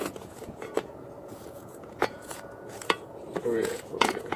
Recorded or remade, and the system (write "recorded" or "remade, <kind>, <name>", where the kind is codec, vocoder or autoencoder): remade, vocoder, Vocos